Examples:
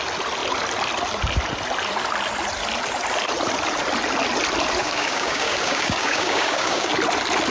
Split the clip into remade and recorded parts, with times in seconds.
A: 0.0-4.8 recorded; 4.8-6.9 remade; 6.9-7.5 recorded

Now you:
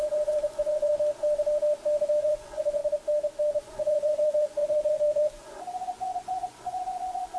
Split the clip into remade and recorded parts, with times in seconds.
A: 0.0-0.9 remade; 0.9-2.2 recorded; 2.2-2.8 remade; 2.8-3.6 recorded; 3.6-7.4 remade